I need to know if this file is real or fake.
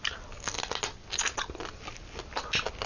real